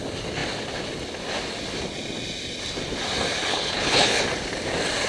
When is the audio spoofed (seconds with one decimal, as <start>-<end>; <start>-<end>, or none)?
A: 3.5-4.2